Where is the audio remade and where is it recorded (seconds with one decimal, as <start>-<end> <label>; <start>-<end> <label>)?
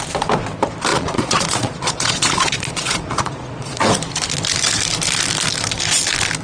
0.0-0.9 recorded; 0.9-3.8 remade; 3.8-6.4 recorded